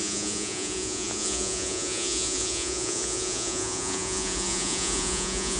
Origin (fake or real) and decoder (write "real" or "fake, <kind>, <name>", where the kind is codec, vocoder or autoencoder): fake, vocoder, Vocos